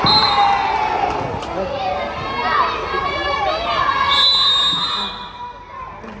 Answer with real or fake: real